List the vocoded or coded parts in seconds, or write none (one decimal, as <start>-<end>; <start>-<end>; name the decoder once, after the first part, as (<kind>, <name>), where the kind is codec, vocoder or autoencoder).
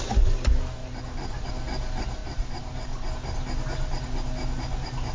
0.8-1.5 (vocoder, BigVGAN v2); 2.2-3.1